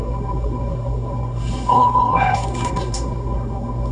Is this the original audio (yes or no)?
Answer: no